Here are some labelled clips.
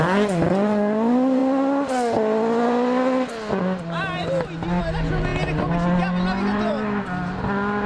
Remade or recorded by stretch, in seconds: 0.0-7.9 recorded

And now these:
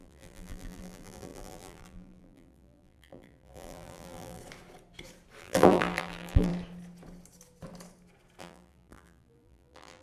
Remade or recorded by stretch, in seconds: 0.0-4.4 remade; 4.4-5.4 recorded; 5.4-6.5 remade; 6.5-8.4 recorded; 8.4-10.0 remade

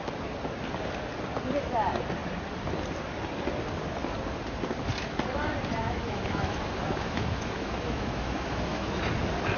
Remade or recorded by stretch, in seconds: 0.0-5.8 recorded; 5.8-9.0 remade; 9.0-9.6 recorded